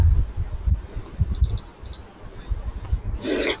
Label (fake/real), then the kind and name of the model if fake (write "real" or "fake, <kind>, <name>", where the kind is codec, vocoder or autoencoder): real